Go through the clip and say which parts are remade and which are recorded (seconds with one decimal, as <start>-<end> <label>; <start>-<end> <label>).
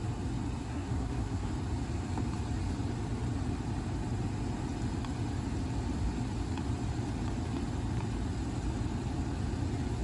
0.0-0.6 recorded; 0.6-1.5 remade; 1.5-10.0 recorded